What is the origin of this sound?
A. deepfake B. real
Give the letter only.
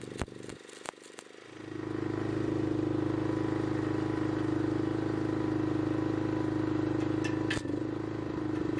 B